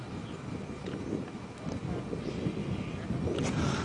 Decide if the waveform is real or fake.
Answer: real